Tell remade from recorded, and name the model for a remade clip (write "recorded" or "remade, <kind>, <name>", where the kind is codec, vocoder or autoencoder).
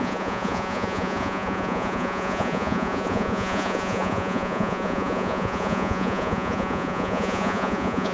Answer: remade, vocoder, Vocos